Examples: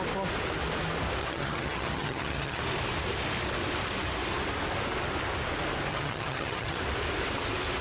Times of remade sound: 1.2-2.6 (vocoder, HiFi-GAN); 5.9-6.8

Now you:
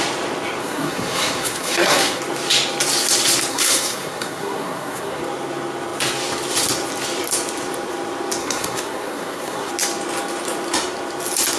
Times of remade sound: 0.6-2.2 (codec, SNAC); 3.5-5.2; 8.4-9.7

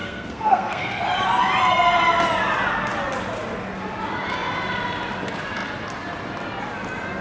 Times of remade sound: 0.0-1.0 (codec, SNAC)